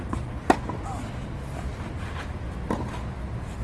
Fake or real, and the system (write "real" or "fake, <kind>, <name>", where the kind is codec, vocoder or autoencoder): real